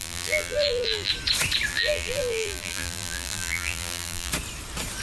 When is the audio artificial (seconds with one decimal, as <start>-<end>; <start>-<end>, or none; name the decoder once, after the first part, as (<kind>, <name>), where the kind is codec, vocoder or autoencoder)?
0.0-1.1 (vocoder, BigVGAN v2); 1.7-4.3